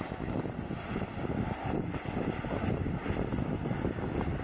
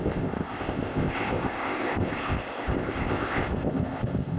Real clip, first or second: first